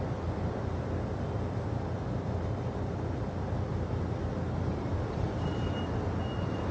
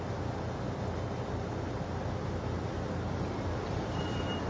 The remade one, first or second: first